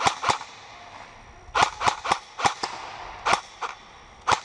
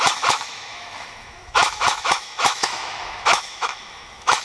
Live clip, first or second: first